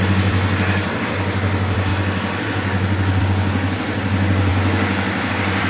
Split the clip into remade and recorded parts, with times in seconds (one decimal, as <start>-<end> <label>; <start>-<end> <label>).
0.0-1.9 remade; 1.9-3.2 recorded; 3.2-4.5 remade; 4.5-5.3 recorded; 5.3-5.7 remade